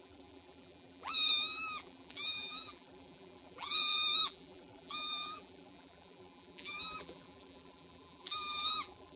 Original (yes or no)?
no